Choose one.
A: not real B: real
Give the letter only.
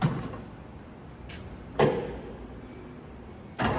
B